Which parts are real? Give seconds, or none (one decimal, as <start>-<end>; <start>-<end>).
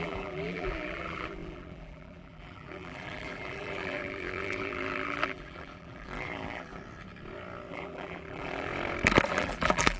6.8-7.7; 8.7-9.3